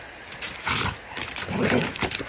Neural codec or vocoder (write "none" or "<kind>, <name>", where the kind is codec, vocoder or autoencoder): none